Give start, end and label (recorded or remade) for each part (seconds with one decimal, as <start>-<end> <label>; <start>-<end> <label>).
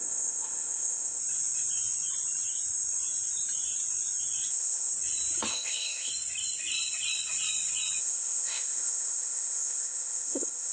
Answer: 0.0-1.2 remade; 1.2-4.5 recorded; 4.5-4.9 remade; 4.9-5.5 recorded; 5.5-6.1 remade; 6.1-8.0 recorded; 8.0-10.7 remade